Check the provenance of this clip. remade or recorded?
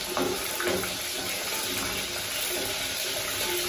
recorded